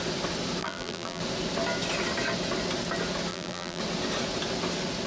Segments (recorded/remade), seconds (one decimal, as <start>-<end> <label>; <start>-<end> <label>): 0.0-0.6 recorded; 0.6-1.2 remade; 1.2-3.3 recorded; 3.3-3.8 remade; 3.8-5.1 recorded